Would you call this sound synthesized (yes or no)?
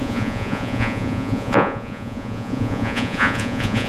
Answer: yes